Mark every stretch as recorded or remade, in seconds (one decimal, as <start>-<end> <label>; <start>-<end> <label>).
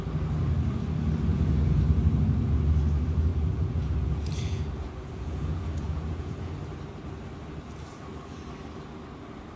0.0-1.3 recorded; 1.3-1.8 remade; 1.8-3.3 recorded; 3.3-6.5 remade; 6.5-9.6 recorded